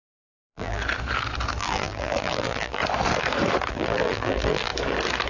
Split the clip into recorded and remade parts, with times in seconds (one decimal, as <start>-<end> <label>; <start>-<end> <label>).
0.0-0.8 remade; 0.8-1.6 recorded; 1.6-2.8 remade; 2.8-3.7 recorded; 3.7-4.7 remade; 4.7-5.3 recorded